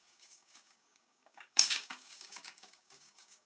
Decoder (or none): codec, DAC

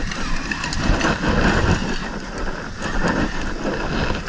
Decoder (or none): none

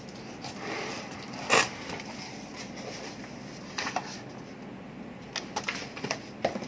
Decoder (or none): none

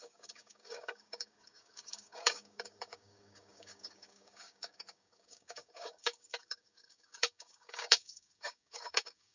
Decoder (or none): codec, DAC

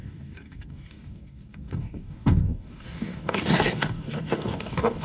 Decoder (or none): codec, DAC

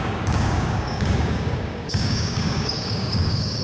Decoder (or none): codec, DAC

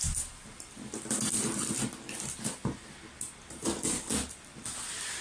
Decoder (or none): none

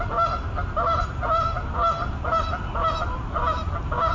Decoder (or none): none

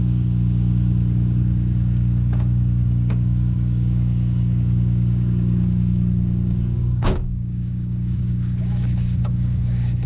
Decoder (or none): codec, DAC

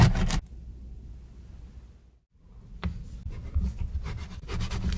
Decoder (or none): none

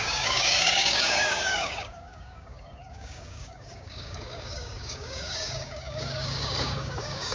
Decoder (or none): codec, DAC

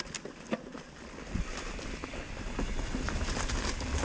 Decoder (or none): none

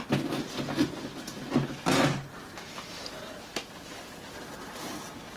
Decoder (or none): none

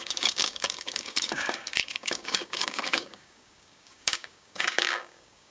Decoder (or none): codec, DAC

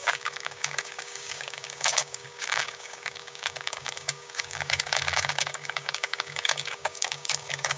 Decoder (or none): codec, DAC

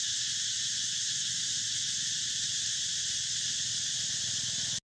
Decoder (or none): none